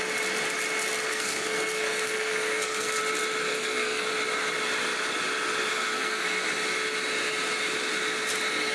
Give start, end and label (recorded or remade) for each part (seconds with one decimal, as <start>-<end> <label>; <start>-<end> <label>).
0.0-1.1 recorded; 1.1-3.0 remade; 3.0-3.5 recorded; 3.5-4.1 remade; 4.1-5.7 recorded; 5.7-6.5 remade; 6.5-8.7 recorded